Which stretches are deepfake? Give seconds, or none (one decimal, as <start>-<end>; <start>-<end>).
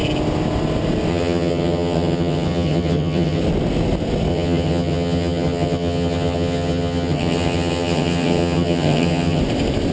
1.1-3.4; 4.3-9.4